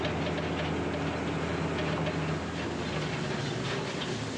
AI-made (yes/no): no